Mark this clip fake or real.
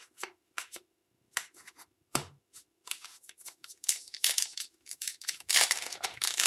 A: fake